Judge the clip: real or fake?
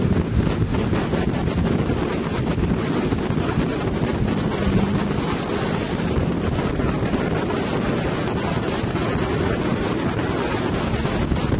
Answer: real